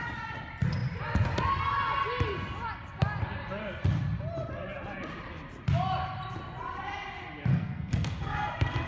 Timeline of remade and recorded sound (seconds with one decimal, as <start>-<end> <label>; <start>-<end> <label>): 0.0-7.5 recorded; 7.5-8.5 remade; 8.5-8.9 recorded